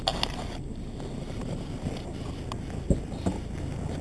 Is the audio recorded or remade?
recorded